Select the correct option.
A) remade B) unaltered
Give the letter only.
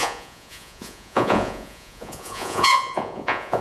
A